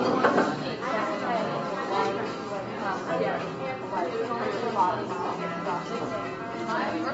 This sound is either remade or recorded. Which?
recorded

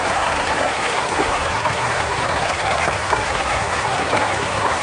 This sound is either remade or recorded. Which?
remade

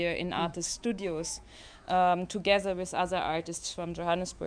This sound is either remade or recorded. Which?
remade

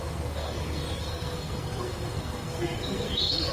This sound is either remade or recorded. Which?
remade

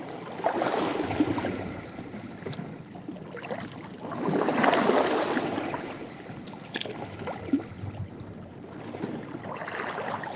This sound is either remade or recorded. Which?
recorded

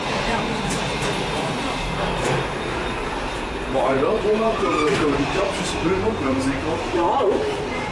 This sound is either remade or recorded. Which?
remade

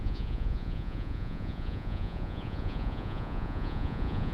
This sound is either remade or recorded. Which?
remade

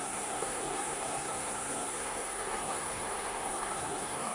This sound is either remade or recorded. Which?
remade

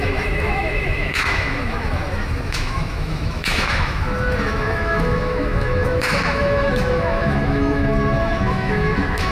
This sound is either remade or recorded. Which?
remade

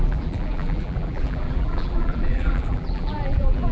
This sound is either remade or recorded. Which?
remade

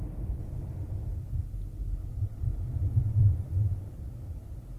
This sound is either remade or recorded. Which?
recorded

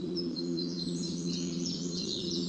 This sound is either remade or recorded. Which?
remade